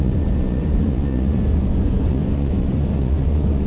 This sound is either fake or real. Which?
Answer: fake